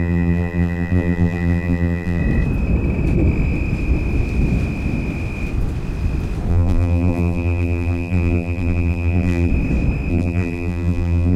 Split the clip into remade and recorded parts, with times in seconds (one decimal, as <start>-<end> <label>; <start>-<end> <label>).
0.0-2.2 remade; 2.2-6.5 recorded; 6.5-9.5 remade; 9.5-10.1 recorded; 10.1-11.4 remade